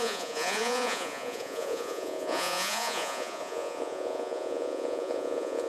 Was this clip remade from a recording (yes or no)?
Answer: yes